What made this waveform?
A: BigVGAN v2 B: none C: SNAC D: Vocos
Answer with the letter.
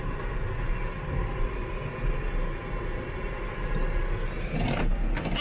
B